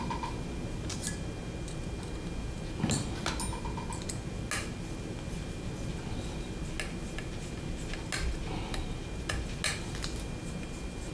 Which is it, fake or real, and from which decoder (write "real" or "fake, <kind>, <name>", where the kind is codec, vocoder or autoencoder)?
real